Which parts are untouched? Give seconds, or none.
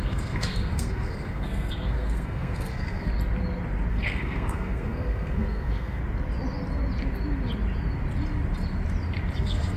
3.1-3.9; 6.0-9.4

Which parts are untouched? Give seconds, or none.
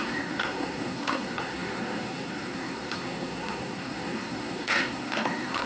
none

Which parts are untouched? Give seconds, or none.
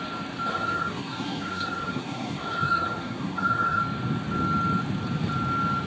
0.0-0.5; 3.8-5.9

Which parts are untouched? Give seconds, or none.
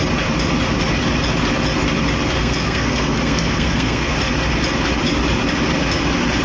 0.0-2.4; 4.1-6.4